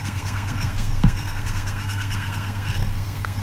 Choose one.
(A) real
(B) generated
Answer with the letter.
B